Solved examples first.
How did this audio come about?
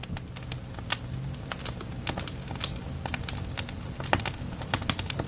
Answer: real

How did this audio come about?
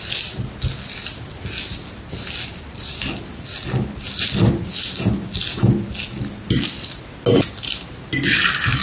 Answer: real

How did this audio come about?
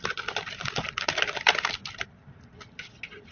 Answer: real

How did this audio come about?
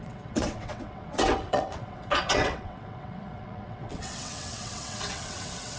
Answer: fake